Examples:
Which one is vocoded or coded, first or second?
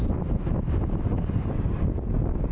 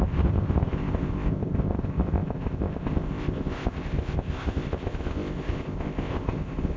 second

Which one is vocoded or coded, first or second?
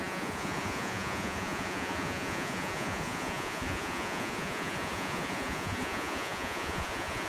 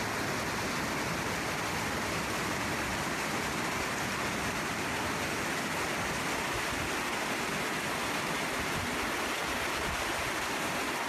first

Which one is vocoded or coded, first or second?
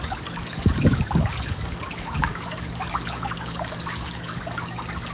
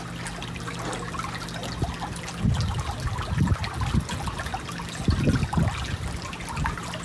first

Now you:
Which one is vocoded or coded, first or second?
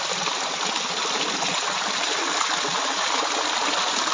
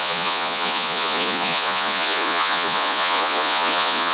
second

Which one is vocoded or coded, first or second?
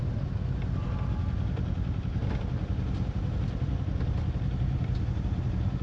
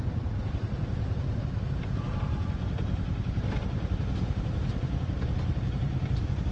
second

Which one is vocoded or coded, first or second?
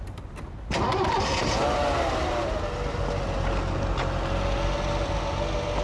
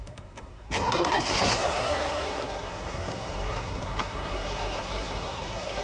second